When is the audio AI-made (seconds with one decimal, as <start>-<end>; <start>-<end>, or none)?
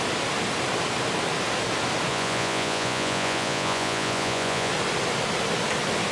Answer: 2.1-4.7